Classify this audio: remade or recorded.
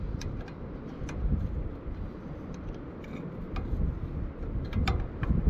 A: recorded